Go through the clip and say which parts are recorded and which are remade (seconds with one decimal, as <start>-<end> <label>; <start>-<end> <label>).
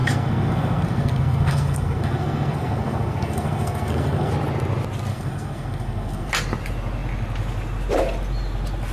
0.0-4.3 remade; 4.3-5.1 recorded; 5.1-6.3 remade; 6.3-8.9 recorded